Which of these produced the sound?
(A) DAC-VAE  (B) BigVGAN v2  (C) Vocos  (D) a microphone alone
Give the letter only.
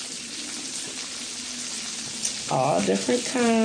D